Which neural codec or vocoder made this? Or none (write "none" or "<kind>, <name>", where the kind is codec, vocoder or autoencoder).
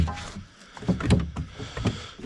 none